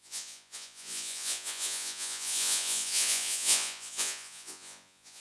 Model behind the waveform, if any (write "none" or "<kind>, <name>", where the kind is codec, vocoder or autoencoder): vocoder, Vocos